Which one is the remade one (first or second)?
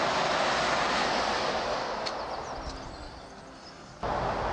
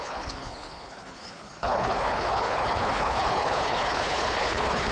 second